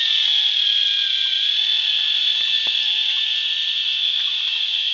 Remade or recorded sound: recorded